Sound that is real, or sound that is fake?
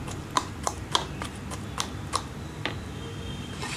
real